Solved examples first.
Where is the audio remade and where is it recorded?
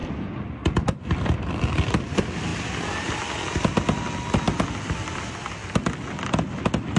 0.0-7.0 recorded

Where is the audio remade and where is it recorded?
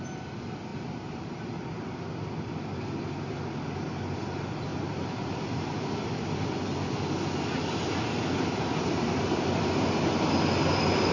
0.0-0.7 recorded; 0.7-1.6 remade; 1.6-4.7 recorded; 4.7-6.3 remade; 6.3-11.1 recorded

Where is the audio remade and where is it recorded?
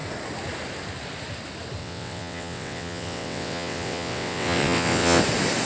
0.0-1.8 recorded; 1.8-5.2 remade; 5.2-5.7 recorded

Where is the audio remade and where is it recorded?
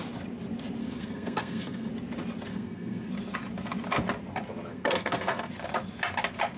0.0-0.8 recorded; 0.8-1.9 remade; 1.9-2.5 recorded; 2.5-3.1 remade; 3.1-4.7 recorded; 4.7-5.5 remade; 5.5-6.6 recorded